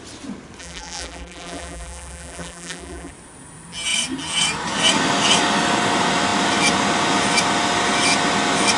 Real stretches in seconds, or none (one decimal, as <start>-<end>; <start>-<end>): 0.0-0.6; 3.1-8.8